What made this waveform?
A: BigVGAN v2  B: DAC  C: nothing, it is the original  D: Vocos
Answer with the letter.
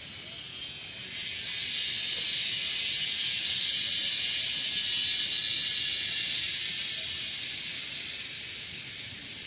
C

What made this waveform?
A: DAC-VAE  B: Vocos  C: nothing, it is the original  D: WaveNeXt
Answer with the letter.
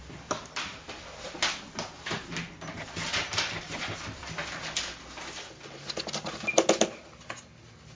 C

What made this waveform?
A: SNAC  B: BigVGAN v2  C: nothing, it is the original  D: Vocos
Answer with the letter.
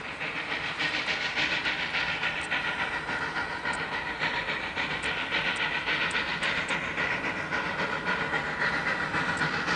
C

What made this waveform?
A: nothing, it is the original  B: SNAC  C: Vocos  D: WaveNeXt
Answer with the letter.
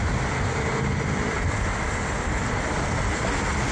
A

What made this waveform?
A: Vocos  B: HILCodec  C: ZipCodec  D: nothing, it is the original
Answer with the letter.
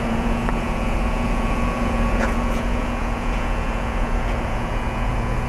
A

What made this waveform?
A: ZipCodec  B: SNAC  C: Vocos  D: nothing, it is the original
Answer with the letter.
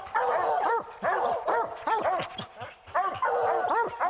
D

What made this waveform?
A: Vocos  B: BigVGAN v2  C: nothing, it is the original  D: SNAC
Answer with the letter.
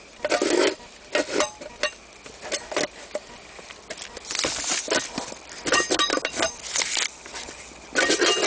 C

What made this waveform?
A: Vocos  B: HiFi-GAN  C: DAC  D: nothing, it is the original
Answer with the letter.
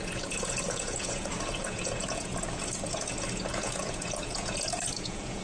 A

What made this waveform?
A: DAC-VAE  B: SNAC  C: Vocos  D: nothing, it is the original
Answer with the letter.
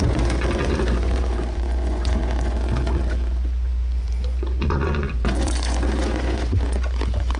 C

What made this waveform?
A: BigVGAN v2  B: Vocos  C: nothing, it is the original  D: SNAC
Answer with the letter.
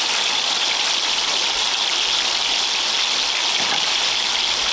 C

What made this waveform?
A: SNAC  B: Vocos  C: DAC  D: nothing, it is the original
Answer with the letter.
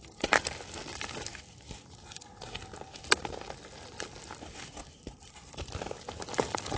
D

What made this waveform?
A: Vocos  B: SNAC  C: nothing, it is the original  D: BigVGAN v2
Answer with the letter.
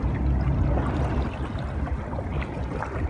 C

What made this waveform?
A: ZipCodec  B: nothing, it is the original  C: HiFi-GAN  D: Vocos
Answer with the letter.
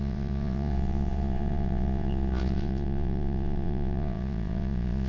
D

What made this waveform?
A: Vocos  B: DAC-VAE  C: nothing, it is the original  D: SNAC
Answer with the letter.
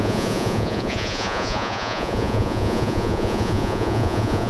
A